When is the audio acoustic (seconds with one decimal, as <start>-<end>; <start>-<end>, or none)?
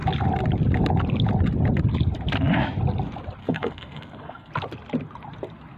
0.0-3.4; 4.5-5.8